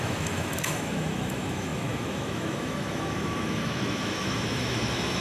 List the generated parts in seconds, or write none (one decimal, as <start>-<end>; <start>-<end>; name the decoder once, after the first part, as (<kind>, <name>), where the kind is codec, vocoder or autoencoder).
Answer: 0.0-5.2 (autoencoder, DAC-VAE)